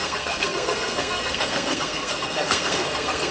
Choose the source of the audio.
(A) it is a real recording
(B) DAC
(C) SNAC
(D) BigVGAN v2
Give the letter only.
C